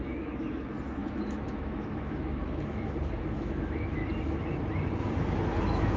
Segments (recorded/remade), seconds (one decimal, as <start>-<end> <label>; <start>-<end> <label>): 0.0-4.0 remade; 4.0-5.6 recorded; 5.6-6.0 remade